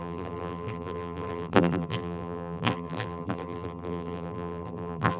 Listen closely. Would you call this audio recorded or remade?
remade